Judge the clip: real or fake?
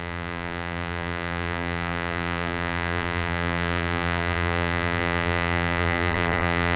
fake